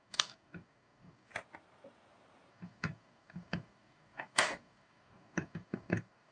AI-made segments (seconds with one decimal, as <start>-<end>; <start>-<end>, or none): 0.0-1.3; 2.5-6.3